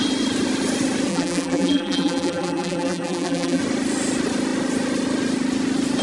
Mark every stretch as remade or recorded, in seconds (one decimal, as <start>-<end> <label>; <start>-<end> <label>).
0.0-1.1 recorded; 1.1-3.6 remade; 3.6-6.0 recorded